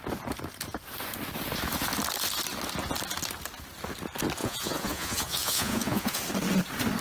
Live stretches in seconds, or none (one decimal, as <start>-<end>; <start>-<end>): 0.0-4.4; 6.2-7.0